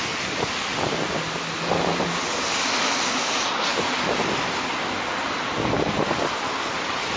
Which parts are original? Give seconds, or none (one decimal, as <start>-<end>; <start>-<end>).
0.0-7.2